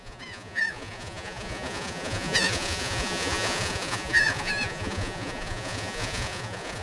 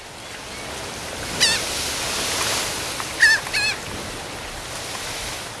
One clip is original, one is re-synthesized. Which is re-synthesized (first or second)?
first